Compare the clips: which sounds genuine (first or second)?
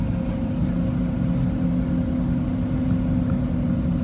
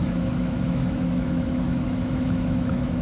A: first